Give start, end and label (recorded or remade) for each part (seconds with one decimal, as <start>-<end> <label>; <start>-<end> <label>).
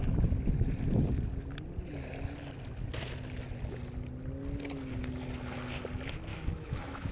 0.0-6.3 recorded; 6.3-7.1 remade